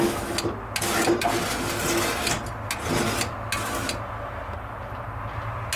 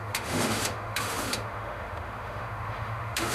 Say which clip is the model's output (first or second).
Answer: second